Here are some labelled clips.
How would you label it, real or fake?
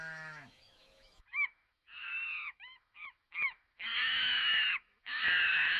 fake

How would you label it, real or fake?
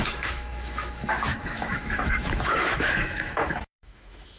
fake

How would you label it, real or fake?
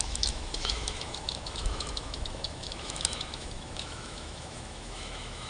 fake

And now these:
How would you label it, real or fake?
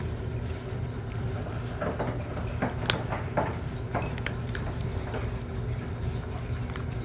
real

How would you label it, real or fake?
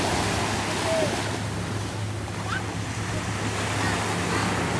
real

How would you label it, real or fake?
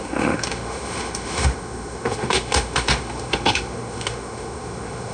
fake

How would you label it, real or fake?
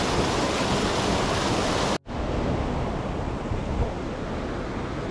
real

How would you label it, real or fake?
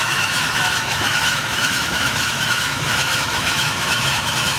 fake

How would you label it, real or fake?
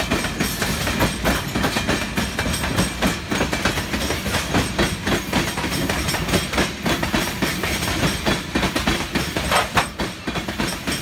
real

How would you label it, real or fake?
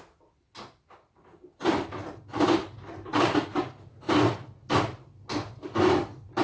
real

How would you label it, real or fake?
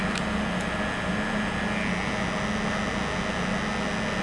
real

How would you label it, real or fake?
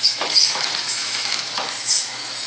fake